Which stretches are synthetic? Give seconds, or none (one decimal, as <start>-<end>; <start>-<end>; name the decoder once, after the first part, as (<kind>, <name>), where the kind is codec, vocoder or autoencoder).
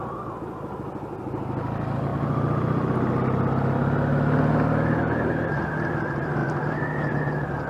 none